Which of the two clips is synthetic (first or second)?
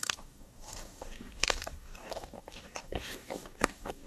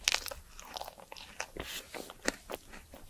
first